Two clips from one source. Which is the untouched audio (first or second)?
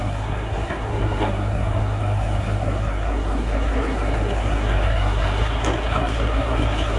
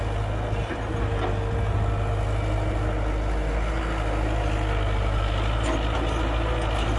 second